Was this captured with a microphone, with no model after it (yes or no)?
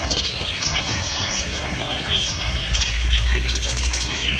no